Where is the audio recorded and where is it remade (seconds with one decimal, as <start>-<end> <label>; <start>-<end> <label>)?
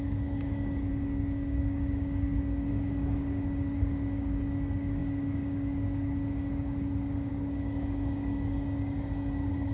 0.0-9.7 remade